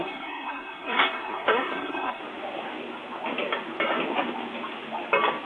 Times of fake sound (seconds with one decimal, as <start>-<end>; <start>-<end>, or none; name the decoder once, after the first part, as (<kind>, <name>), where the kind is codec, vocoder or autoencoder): 0.0-2.2 (codec, SNAC)